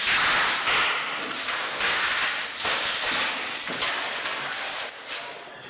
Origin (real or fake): real